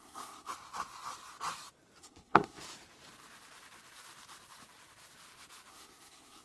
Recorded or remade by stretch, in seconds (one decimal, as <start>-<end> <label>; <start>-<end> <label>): 0.0-0.5 remade; 0.5-2.0 recorded; 2.0-2.6 remade; 2.6-5.7 recorded; 5.7-6.4 remade